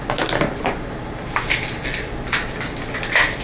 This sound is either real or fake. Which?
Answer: real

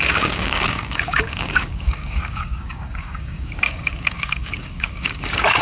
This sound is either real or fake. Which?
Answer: fake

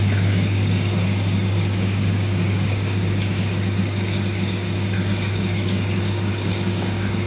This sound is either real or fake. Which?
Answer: fake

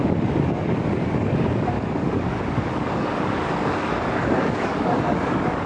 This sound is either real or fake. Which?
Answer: fake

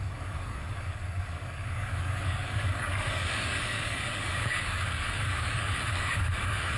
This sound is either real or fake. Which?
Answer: fake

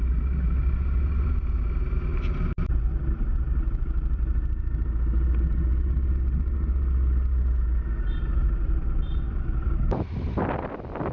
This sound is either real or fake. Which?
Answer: real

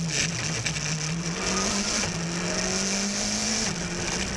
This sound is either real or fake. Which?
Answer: real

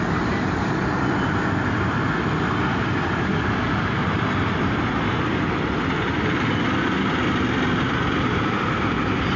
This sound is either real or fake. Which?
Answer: real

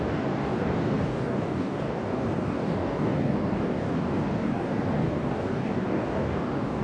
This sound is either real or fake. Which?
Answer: fake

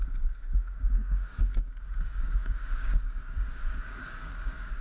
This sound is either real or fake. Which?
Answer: fake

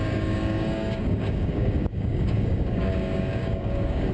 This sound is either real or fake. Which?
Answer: fake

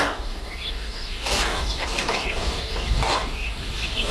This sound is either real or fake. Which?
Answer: fake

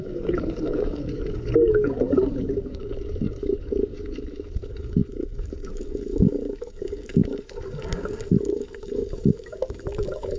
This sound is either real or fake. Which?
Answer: fake